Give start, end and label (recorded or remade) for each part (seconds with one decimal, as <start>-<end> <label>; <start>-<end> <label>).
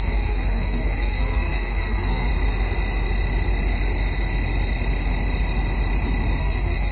0.0-2.3 remade; 2.3-6.4 recorded; 6.4-6.9 remade